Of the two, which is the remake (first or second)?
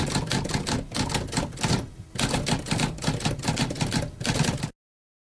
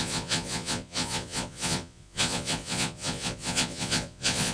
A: second